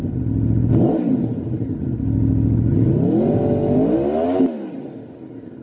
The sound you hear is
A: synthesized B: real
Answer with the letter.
B